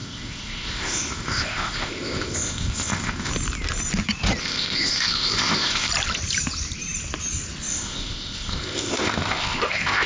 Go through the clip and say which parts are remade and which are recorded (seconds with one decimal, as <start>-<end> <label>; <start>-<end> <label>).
0.0-3.3 remade; 3.3-4.4 recorded; 4.4-5.9 remade; 5.9-7.7 recorded; 7.7-10.1 remade

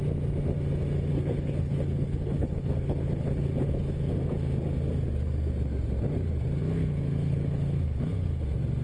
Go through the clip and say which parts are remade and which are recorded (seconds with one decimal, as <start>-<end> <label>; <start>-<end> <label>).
0.0-1.1 recorded; 1.1-4.1 remade; 4.1-6.6 recorded; 6.6-8.4 remade; 8.4-8.8 recorded

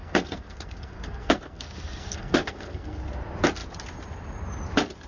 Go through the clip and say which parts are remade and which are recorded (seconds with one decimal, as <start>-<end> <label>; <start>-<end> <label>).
0.0-3.1 remade; 3.1-5.1 recorded

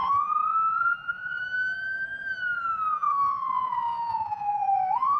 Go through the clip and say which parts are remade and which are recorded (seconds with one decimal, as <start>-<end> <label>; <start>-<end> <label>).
0.0-1.4 remade; 1.4-2.9 recorded; 2.9-5.2 remade

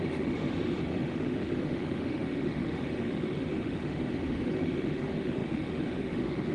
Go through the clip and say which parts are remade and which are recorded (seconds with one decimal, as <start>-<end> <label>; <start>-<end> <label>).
0.0-6.5 remade